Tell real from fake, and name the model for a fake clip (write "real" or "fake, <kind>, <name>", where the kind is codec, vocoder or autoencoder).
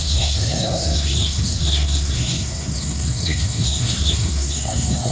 fake, codec, SNAC